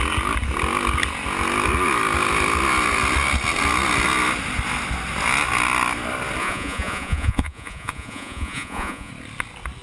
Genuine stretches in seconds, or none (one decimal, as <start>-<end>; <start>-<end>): 0.0-6.4; 9.1-9.8